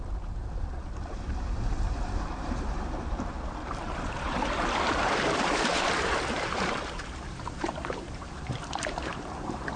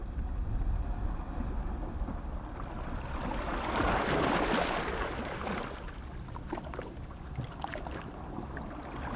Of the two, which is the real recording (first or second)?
second